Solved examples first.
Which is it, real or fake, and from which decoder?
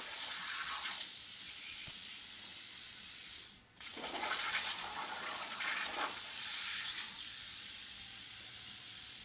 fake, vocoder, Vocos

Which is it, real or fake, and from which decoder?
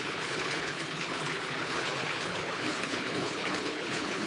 fake, codec, HILCodec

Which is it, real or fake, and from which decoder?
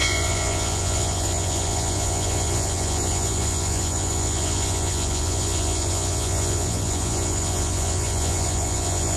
fake, vocoder, Vocos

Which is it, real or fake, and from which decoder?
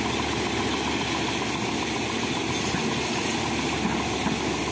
real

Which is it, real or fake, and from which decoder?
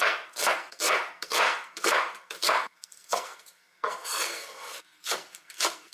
fake, codec, SNAC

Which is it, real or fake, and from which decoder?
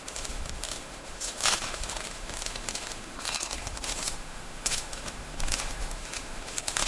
fake, autoencoder, DAC-VAE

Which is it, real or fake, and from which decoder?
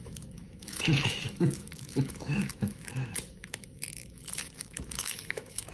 fake, autoencoder, DAC-VAE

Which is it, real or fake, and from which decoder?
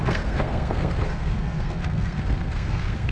fake, codec, SNAC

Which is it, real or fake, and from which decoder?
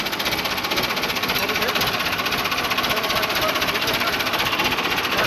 real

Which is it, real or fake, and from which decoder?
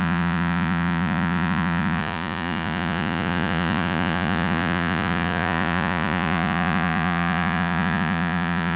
fake, vocoder, Vocos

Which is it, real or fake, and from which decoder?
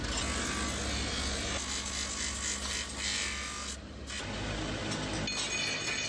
real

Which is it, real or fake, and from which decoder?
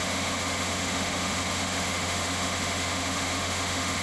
fake, autoencoder, DAC-VAE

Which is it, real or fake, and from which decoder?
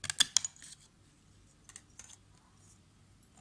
real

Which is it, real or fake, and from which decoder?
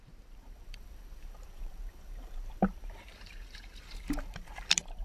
fake, vocoder, BigVGAN v2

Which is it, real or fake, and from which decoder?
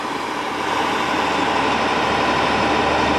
real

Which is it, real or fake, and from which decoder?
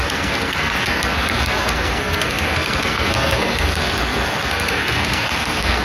fake, codec, SNAC